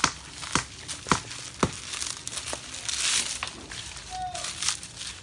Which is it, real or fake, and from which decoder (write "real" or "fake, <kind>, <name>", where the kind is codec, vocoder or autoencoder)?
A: real